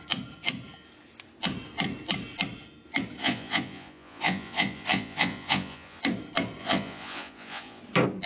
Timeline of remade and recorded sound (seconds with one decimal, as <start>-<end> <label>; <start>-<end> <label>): 0.0-3.2 recorded; 3.2-6.0 remade; 6.0-6.6 recorded; 6.6-7.8 remade; 7.8-8.3 recorded